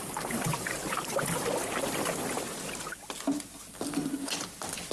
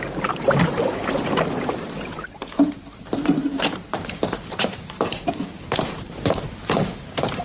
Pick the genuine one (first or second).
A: first